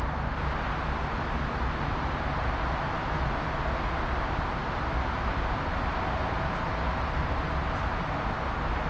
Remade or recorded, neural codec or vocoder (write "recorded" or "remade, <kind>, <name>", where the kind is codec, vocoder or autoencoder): recorded